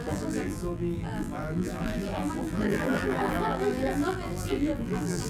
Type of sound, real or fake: fake